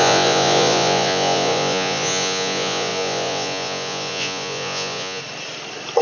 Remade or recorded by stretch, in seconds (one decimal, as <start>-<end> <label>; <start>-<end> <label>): 0.0-5.2 remade; 5.2-6.0 recorded